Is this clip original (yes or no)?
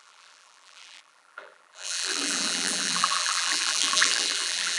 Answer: no